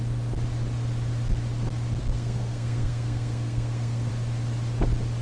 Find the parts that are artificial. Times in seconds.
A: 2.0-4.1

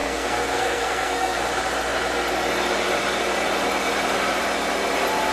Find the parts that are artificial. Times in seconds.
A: 0.0-1.5

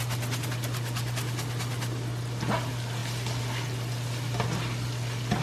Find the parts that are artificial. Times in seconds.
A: none

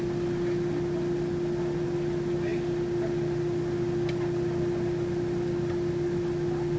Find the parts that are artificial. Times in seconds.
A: none

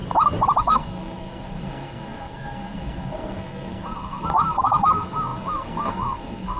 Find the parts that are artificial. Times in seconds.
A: 0.6-6.6